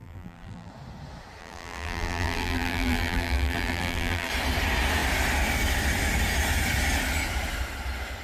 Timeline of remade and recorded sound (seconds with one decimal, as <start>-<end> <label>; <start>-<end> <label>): 0.0-0.7 remade; 0.7-1.4 recorded; 1.4-4.3 remade; 4.3-8.2 recorded